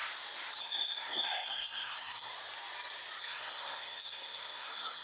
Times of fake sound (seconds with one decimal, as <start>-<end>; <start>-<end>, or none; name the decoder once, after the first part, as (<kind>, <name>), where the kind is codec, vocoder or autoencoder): 0.6-2.3 (codec, SNAC); 3.2-5.0